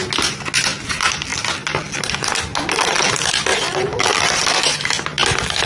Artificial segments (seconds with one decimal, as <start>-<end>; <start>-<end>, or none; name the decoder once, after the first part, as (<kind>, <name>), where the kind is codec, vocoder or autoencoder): none